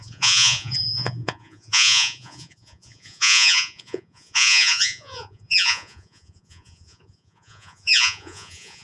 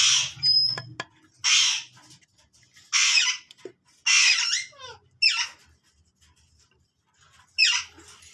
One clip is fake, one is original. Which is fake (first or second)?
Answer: first